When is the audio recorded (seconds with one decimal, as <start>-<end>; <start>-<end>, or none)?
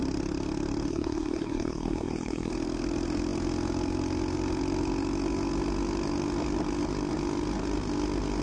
0.0-0.9; 2.5-8.4